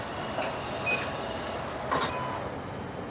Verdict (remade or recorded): recorded